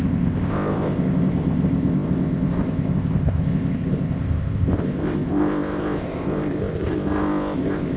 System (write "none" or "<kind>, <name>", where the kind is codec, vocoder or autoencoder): codec, ZipCodec